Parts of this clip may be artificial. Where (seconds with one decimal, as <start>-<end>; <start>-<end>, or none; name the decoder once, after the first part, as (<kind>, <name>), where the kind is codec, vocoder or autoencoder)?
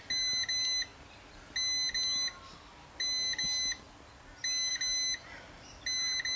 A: none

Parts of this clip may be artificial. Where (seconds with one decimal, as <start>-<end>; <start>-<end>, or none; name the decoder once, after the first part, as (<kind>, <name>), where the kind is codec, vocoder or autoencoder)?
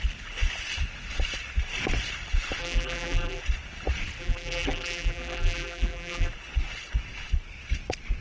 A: 2.6-3.4 (vocoder, BigVGAN v2); 4.2-6.3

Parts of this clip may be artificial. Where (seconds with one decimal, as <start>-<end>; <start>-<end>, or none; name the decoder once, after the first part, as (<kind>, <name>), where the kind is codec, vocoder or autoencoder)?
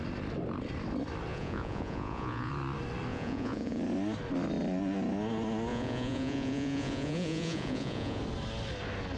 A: 1.3-2.5 (vocoder, Vocos); 3.1-3.8; 5.7-8.2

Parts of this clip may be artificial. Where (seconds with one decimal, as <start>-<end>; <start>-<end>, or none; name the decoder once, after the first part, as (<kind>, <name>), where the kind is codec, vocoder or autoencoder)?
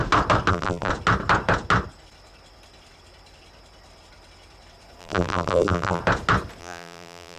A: 0.5-0.9 (vocoder, BigVGAN v2); 5.0-6.0; 6.6-7.4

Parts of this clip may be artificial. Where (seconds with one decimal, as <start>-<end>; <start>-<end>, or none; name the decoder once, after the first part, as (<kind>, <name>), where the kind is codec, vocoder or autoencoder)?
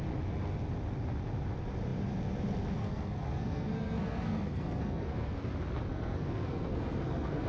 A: 2.8-5.5 (codec, SNAC); 5.9-7.5